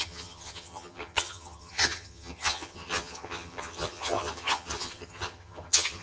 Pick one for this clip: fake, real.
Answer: fake